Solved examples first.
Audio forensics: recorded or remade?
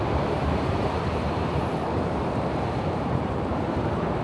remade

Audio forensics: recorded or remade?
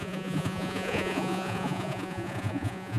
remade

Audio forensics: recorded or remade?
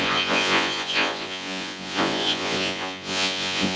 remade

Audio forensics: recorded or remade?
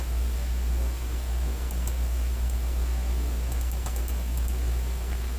remade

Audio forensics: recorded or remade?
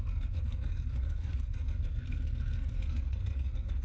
remade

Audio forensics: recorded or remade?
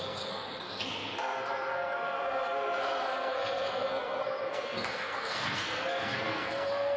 remade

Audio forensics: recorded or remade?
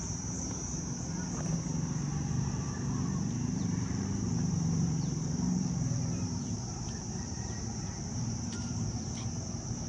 remade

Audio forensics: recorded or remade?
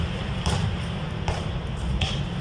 remade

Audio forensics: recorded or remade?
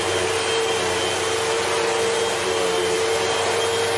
recorded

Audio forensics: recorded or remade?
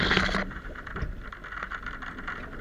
recorded